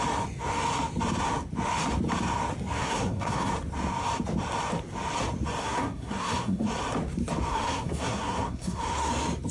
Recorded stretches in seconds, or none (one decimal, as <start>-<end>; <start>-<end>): 0.0-2.8; 3.5-5.6; 6.7-7.5; 9.1-9.5